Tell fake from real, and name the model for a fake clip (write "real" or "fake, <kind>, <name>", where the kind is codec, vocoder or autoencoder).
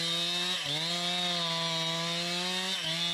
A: real